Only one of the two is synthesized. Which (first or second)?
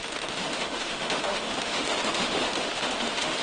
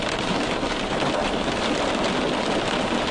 first